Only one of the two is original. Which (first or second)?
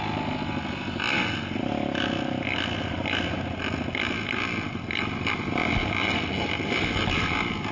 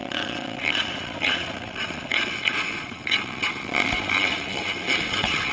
first